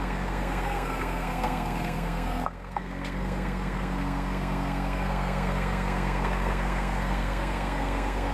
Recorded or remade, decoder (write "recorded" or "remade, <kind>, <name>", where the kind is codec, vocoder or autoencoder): remade, codec, SNAC